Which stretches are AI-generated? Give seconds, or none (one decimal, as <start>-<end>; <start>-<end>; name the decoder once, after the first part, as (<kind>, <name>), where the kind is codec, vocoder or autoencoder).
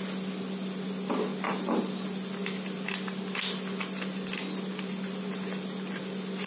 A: none